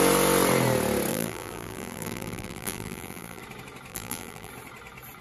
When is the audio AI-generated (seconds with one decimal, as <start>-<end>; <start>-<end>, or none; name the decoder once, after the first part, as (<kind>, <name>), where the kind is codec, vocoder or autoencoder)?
1.1-3.4 (vocoder, BigVGAN v2); 3.9-4.5